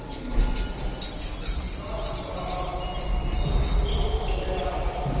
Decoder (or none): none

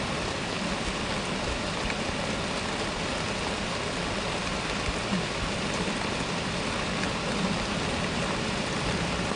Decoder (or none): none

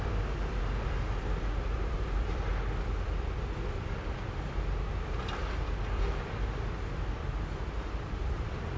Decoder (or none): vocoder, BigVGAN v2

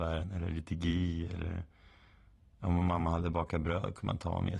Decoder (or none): vocoder, BigVGAN v2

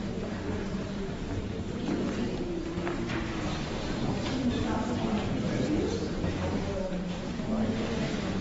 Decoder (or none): vocoder, BigVGAN v2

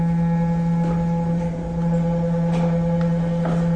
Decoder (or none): none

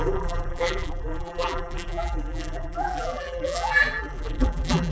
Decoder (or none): vocoder, BigVGAN v2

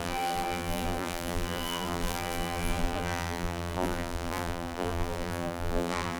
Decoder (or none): vocoder, BigVGAN v2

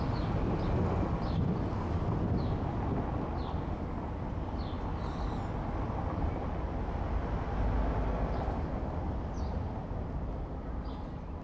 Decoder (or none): none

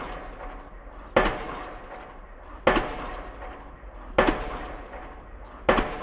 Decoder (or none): none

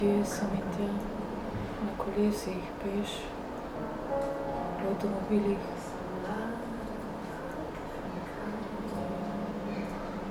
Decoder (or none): none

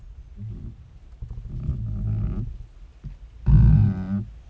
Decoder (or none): none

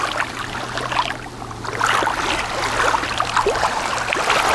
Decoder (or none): none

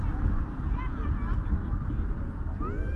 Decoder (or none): none